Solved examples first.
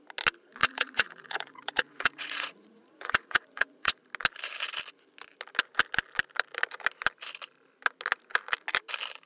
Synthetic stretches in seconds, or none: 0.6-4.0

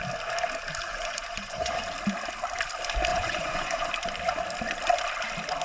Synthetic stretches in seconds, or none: 0.9-1.8; 3.1-3.9

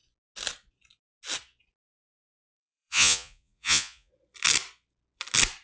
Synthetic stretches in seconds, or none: 2.1-4.1

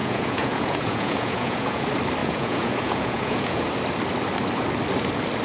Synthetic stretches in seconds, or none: 0.0-1.8; 2.2-3.6

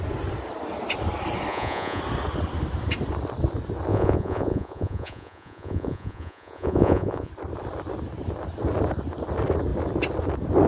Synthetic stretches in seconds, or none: 1.5-2.0; 3.9-7.3

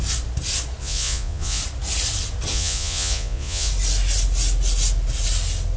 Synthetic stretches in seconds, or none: 0.8-1.6; 2.5-3.7